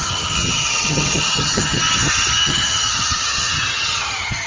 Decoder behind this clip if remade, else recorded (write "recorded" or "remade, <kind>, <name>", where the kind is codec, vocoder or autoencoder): remade, vocoder, HiFi-GAN